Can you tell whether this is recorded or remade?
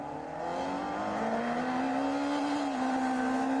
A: recorded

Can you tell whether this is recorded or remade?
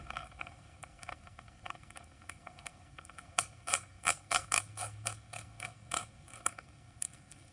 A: remade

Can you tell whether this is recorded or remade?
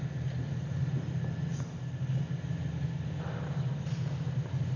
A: recorded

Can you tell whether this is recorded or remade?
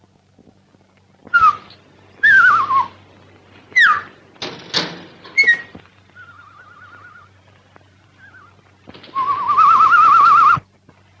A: recorded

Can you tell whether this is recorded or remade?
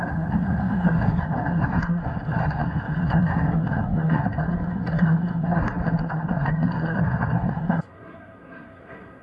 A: remade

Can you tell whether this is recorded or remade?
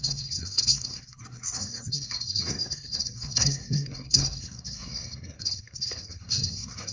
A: remade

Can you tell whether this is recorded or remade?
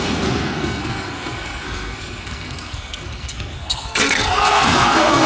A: remade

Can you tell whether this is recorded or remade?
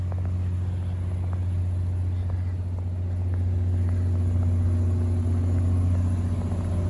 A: recorded